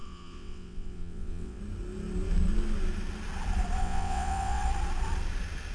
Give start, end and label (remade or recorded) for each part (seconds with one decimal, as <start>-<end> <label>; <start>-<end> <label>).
0.0-1.6 remade; 1.6-3.8 recorded; 3.8-4.6 remade; 4.6-5.7 recorded